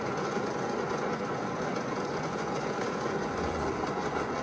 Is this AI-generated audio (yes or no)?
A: yes